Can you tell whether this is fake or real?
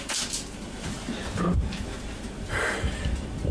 fake